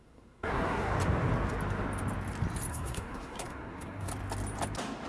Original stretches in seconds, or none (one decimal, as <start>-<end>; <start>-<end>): 0.9-2.7; 4.1-5.1